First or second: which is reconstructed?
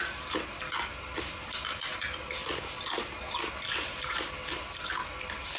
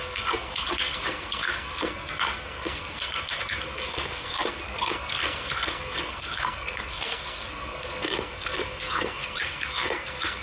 second